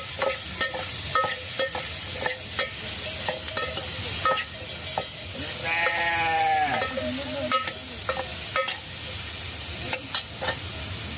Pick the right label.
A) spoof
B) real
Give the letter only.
B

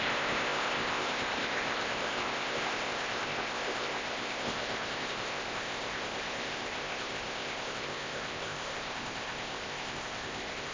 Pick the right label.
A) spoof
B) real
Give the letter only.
A